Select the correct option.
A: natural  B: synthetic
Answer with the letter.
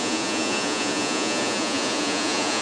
B